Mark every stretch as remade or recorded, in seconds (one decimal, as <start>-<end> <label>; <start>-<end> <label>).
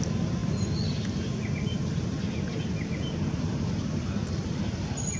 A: 0.0-5.2 recorded